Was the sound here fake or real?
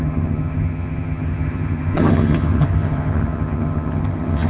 fake